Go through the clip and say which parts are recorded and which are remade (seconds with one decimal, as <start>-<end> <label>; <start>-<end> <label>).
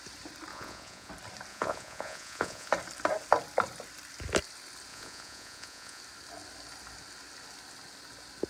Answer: 0.0-0.5 recorded; 0.5-1.1 remade; 1.1-1.5 recorded; 1.5-2.7 remade; 2.7-4.9 recorded; 4.9-6.0 remade; 6.0-8.5 recorded